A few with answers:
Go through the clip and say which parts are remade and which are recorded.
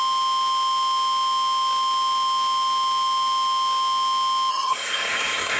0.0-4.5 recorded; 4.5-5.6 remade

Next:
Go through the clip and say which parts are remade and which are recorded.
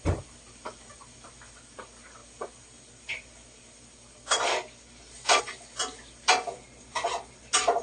0.0-7.8 recorded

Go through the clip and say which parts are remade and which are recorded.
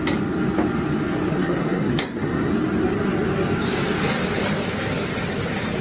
0.0-1.3 recorded; 1.3-2.5 remade; 2.5-5.8 recorded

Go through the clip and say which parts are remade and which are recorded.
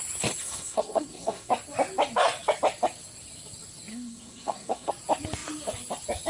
0.0-0.4 recorded; 0.4-1.5 remade; 1.5-3.9 recorded; 3.9-4.9 remade; 4.9-6.3 recorded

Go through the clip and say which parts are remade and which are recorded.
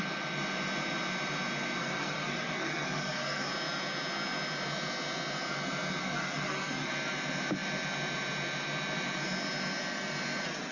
0.0-1.8 recorded; 1.8-3.5 remade; 3.5-6.0 recorded; 6.0-6.9 remade; 6.9-10.7 recorded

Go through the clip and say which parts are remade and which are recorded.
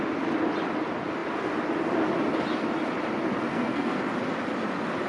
0.0-3.5 recorded; 3.5-4.0 remade; 4.0-5.1 recorded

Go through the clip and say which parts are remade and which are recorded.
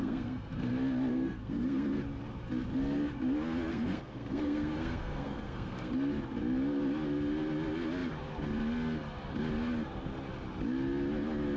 0.0-0.7 remade; 0.7-1.1 recorded; 1.1-2.0 remade; 2.0-3.7 recorded; 3.7-5.9 remade; 5.9-11.6 recorded